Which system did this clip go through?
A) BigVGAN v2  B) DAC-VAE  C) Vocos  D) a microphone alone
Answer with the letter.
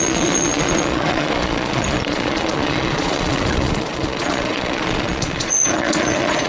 C